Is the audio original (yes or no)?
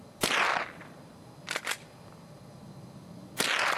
yes